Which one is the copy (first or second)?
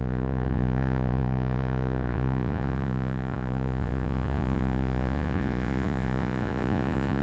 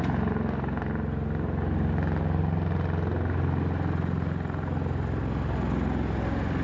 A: first